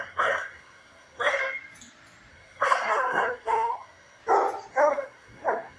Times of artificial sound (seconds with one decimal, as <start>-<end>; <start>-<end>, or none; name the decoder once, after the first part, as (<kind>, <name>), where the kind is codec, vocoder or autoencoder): 0.0-1.4 (codec, SNAC); 2.3-4.2; 4.7-5.8